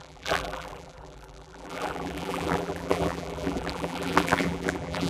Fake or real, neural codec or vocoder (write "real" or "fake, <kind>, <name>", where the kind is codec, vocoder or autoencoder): fake, vocoder, BigVGAN v2